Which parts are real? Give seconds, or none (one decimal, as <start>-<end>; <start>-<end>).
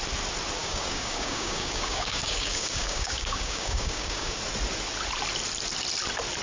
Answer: 0.0-0.6; 4.4-6.4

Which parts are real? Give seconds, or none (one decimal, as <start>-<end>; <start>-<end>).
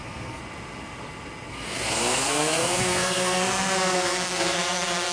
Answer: 0.4-1.5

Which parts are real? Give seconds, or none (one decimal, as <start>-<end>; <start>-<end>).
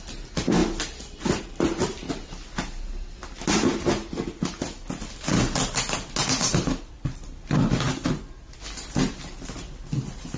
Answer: 0.0-10.4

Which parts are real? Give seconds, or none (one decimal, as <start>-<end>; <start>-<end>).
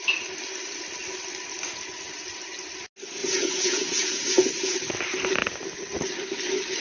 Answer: 0.0-3.2; 4.5-6.8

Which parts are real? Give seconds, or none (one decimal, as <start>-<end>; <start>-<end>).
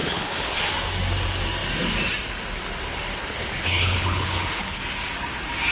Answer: 0.6-3.2; 4.8-5.7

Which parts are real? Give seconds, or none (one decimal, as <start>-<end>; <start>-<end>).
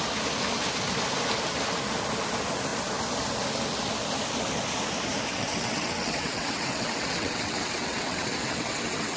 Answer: 0.0-5.3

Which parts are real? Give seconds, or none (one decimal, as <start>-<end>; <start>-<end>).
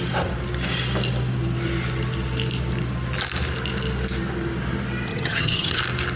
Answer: 0.0-5.1; 5.8-6.2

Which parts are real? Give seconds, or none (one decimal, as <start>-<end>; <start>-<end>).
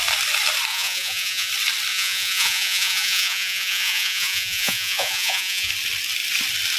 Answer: 0.0-0.7; 1.5-1.9; 5.7-6.8